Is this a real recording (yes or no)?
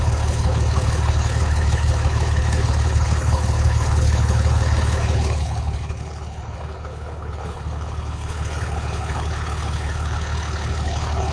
no